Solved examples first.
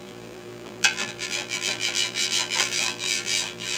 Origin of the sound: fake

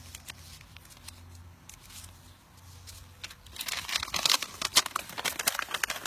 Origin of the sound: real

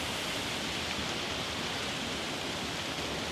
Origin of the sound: real